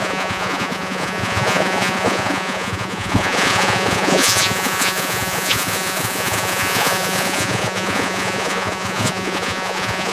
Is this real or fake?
fake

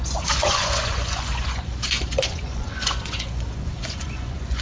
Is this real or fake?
fake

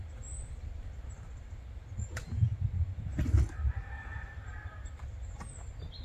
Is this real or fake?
real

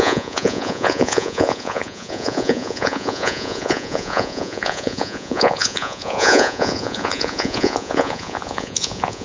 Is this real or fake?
fake